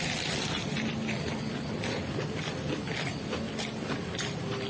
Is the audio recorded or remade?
recorded